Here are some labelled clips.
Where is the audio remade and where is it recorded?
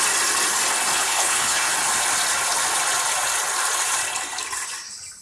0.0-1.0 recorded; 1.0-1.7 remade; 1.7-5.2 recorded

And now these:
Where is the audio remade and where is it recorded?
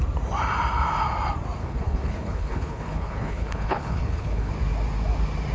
0.0-1.6 recorded; 1.6-4.5 remade; 4.5-5.5 recorded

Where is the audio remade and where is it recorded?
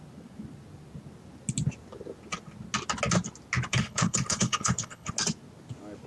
0.0-3.7 recorded; 3.7-5.1 remade; 5.1-6.1 recorded